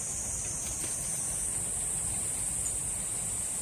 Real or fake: real